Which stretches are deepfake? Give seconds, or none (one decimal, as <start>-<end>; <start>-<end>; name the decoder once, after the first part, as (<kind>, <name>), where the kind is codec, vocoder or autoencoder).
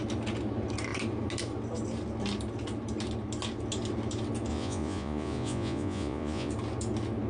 4.5-6.5 (vocoder, Vocos)